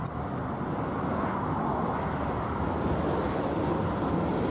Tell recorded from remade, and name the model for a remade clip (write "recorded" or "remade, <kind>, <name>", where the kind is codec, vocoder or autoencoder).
recorded